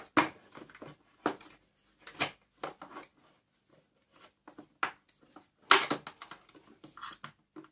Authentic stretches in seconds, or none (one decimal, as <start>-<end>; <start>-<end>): 0.0-7.7